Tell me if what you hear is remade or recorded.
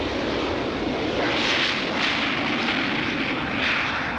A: recorded